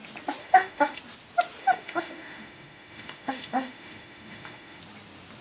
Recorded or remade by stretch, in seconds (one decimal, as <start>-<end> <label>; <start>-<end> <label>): 0.0-0.4 recorded; 0.4-1.0 remade; 1.0-1.6 recorded; 1.6-4.8 remade; 4.8-5.4 recorded